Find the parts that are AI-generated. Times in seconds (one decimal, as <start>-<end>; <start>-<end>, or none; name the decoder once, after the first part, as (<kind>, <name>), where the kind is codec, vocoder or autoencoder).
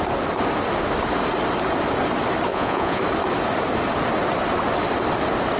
2.5-3.0 (vocoder, Vocos)